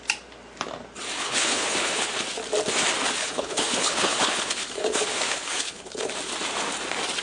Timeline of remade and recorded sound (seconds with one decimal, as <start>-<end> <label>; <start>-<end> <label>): 0.0-1.2 recorded; 1.2-2.1 remade; 2.1-3.2 recorded; 3.2-6.1 remade; 6.1-7.2 recorded